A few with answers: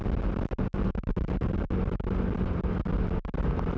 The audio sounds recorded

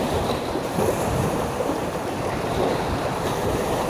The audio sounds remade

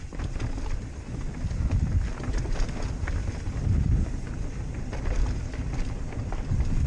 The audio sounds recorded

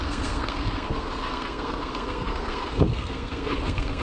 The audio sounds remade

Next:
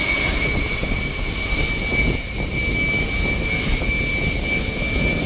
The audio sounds recorded